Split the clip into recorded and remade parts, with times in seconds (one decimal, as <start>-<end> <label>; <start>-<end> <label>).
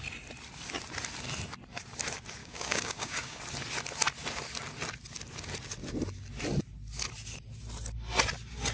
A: 0.0-2.4 recorded; 2.4-3.4 remade; 3.4-8.7 recorded